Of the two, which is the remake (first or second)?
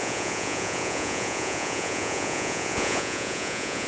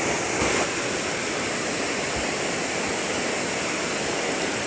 first